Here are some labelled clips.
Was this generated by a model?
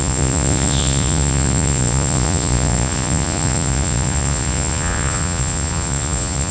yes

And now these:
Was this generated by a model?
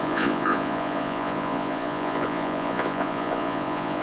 yes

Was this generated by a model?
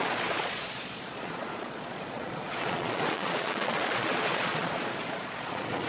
yes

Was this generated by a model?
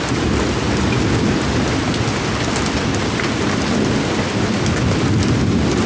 no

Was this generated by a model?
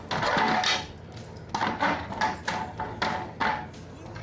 no